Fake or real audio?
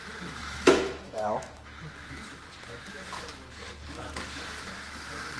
fake